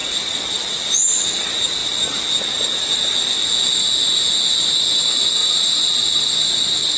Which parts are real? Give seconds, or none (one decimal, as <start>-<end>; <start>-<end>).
0.0-5.4; 6.3-7.0